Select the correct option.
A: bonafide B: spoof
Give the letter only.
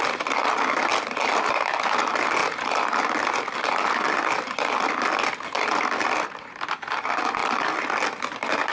A